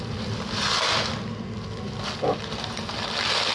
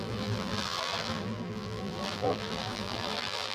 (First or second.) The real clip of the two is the first